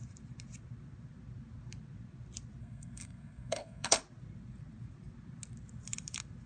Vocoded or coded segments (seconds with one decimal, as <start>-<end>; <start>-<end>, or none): 2.6-4.0